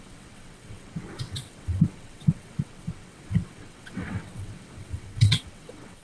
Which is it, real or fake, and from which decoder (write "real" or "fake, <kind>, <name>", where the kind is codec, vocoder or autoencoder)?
fake, vocoder, WaveNeXt